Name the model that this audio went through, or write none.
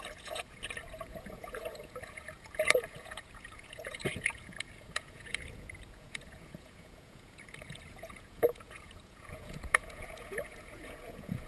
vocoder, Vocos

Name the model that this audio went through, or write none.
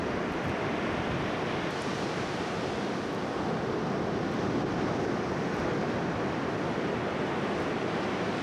none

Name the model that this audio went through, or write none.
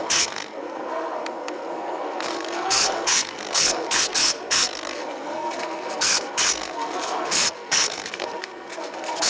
codec, SNAC